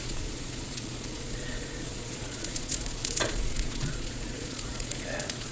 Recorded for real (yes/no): no